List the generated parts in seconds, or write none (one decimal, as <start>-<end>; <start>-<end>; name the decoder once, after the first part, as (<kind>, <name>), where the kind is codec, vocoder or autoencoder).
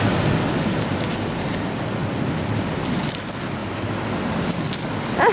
none